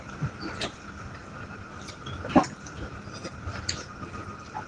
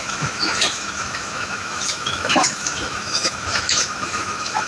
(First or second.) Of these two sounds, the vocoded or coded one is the second